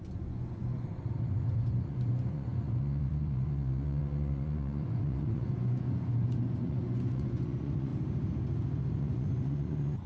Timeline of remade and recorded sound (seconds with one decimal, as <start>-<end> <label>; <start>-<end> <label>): 0.0-7.9 remade; 7.9-9.0 recorded; 9.0-10.1 remade